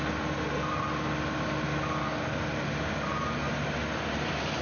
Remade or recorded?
recorded